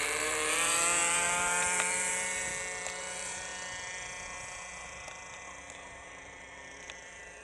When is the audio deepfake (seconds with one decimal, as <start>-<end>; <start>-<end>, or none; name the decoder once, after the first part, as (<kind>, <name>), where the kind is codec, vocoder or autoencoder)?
0.0-2.5 (vocoder, BigVGAN v2); 3.0-3.5; 5.7-7.4